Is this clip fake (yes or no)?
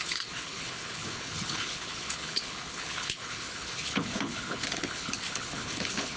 yes